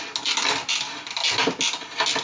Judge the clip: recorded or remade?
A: recorded